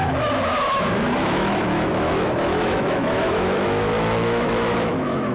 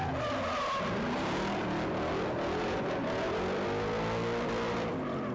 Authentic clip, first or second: second